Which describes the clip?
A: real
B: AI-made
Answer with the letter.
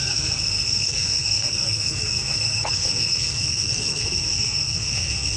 B